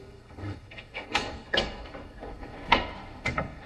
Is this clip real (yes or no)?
no